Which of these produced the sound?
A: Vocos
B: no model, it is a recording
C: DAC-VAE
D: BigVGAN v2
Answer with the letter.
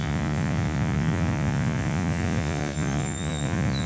A